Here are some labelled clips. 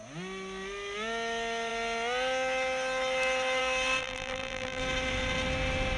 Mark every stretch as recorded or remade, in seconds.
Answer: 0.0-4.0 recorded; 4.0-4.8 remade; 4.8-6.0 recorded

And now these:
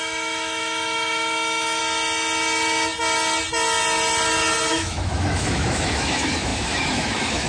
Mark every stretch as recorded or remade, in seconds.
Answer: 0.0-1.8 remade; 1.8-4.7 recorded; 4.7-7.5 remade

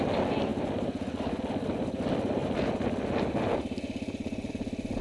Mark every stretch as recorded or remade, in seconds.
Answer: 0.0-5.0 recorded

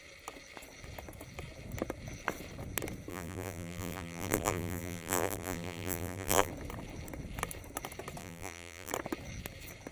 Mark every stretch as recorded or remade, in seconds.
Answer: 0.0-3.1 recorded; 3.1-6.5 remade; 6.5-8.2 recorded; 8.2-8.9 remade; 8.9-9.9 recorded